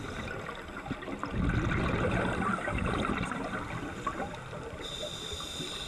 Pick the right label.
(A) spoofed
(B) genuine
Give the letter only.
B